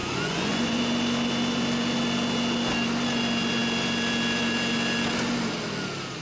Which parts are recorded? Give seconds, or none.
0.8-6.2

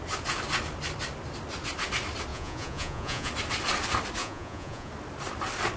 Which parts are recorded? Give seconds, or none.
0.0-2.3; 3.3-4.2; 4.9-5.8

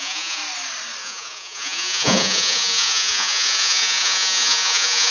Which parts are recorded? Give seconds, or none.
0.4-1.0

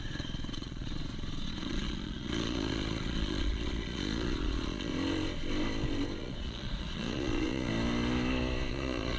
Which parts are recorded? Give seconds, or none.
4.9-6.2; 7.7-8.7

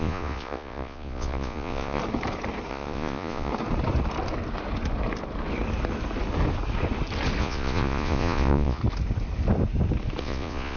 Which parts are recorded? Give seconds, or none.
2.0-2.7; 3.5-7.4; 8.8-10.2

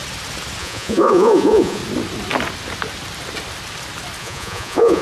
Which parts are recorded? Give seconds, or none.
0.0-0.6; 1.8-4.2